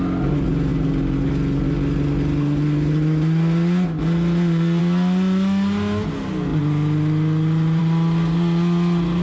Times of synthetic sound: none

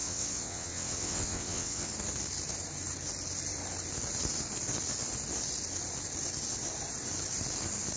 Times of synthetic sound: 0.0-1.9 (vocoder, WaveNeXt)